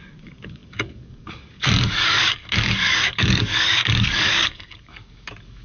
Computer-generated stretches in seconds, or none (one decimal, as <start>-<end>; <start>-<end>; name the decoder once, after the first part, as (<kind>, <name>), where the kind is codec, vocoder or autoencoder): 0.0-5.6 (codec, DAC)